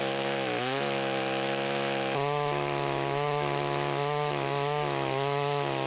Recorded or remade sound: remade